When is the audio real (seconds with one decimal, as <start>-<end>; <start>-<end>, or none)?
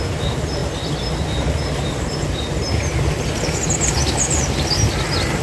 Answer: 0.0-5.4